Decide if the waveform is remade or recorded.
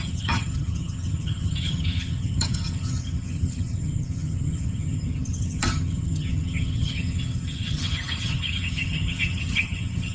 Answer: remade